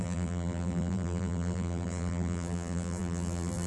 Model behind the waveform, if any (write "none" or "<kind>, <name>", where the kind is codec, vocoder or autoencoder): vocoder, BigVGAN v2